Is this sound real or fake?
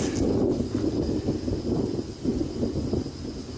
real